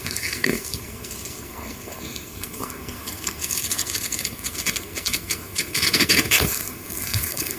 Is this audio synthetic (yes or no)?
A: yes